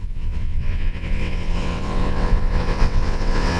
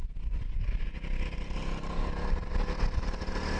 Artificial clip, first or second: first